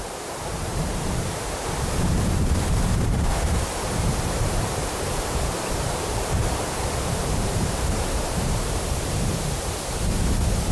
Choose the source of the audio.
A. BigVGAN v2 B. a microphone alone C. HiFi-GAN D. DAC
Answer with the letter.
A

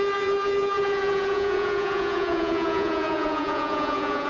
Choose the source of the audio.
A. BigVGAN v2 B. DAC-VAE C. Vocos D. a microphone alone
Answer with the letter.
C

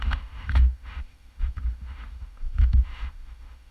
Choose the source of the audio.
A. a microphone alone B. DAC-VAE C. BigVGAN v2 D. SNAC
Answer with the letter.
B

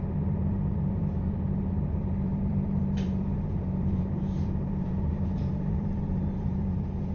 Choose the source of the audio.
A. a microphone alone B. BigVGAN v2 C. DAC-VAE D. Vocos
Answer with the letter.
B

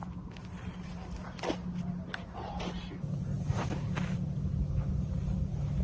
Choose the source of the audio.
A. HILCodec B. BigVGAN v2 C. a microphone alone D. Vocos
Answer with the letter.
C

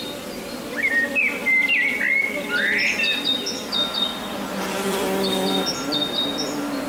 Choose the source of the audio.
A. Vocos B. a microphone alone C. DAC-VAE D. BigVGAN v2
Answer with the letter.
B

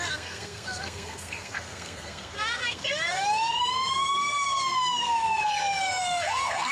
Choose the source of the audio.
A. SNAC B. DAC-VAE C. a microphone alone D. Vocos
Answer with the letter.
A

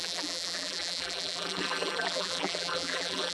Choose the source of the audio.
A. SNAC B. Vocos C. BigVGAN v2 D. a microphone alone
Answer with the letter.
C